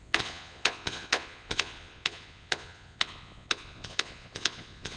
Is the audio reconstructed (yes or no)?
yes